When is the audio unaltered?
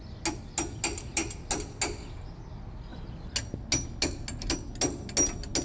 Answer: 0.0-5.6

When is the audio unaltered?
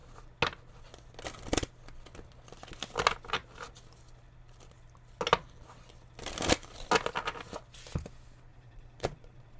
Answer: 0.0-8.5